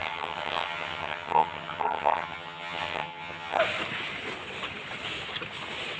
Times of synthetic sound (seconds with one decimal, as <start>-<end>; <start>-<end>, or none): 0.0-3.6